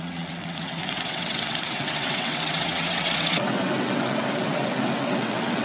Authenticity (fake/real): fake